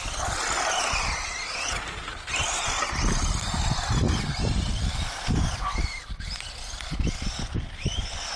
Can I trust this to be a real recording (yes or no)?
yes